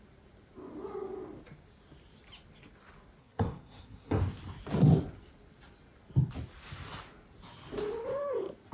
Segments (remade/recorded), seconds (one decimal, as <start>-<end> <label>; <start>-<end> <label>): 0.0-3.2 recorded; 3.2-4.2 remade; 4.2-8.7 recorded